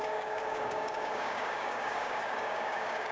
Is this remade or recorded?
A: remade